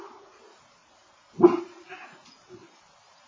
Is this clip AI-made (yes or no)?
yes